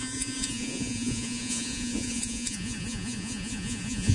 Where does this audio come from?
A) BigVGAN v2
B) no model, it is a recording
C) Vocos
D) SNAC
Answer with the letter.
C